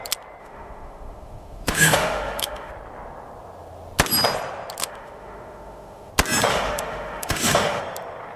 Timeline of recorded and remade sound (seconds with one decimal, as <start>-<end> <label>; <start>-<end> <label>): 0.0-0.4 recorded; 0.4-2.7 remade; 2.7-4.8 recorded; 4.8-6.1 remade; 6.1-6.5 recorded; 6.5-7.8 remade; 7.8-8.4 recorded